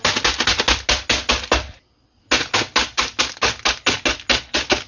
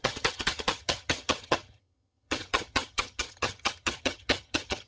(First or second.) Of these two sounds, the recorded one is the first